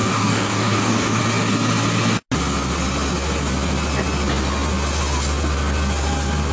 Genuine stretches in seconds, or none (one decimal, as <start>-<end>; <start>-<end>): 1.2-6.5

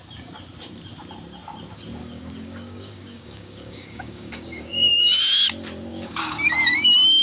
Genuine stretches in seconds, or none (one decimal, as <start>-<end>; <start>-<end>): 0.0-2.0; 5.2-5.9; 6.6-7.2

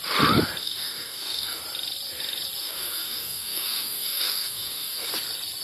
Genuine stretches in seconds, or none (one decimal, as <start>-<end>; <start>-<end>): 0.0-0.6; 1.6-2.6; 5.1-5.6